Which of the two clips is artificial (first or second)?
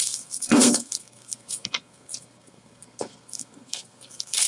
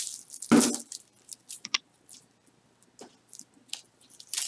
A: first